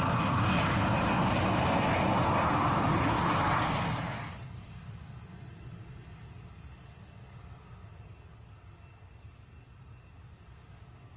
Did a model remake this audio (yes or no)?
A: no